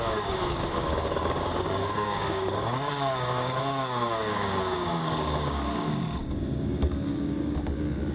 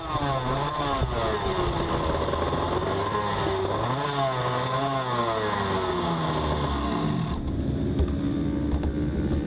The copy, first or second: first